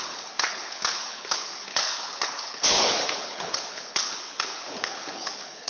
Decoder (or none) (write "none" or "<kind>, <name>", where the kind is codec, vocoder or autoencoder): codec, HILCodec